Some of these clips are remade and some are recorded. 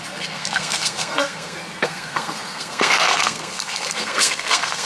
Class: remade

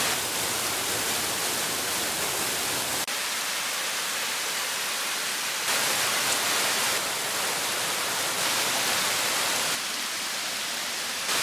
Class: recorded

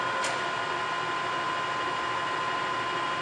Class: recorded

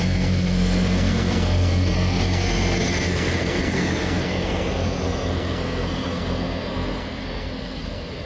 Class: remade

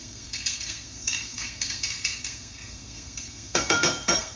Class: remade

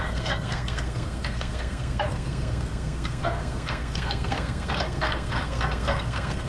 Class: remade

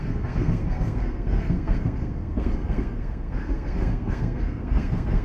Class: remade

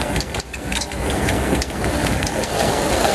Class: remade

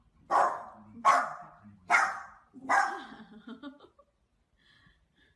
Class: recorded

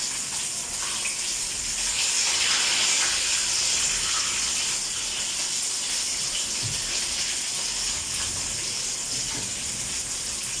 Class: recorded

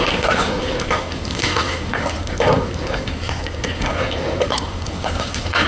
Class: remade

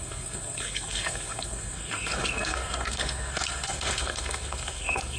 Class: remade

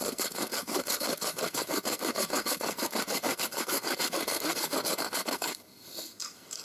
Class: remade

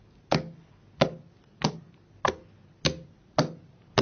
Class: recorded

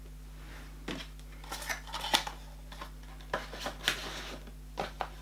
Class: recorded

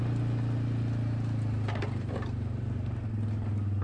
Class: recorded